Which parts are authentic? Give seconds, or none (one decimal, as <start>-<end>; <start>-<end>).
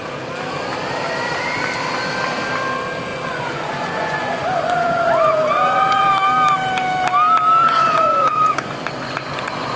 0.0-3.1; 6.1-7.6